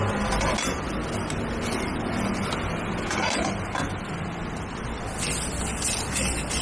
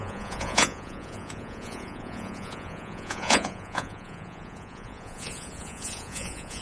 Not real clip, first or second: second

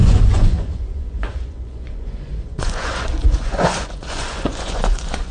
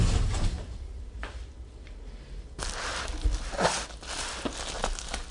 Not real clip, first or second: first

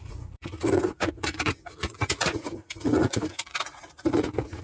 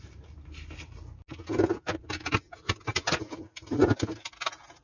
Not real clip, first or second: first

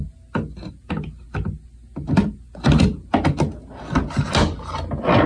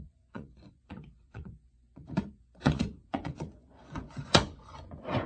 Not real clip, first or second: second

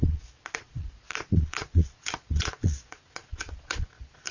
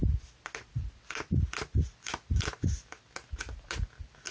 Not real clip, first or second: first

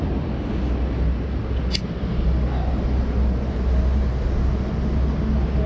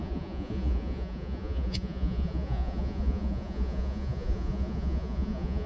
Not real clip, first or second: second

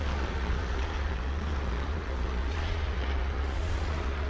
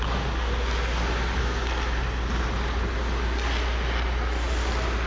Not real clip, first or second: first